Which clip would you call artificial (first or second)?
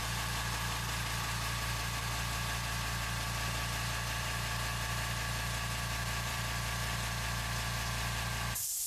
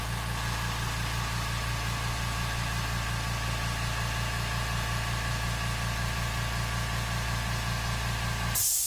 first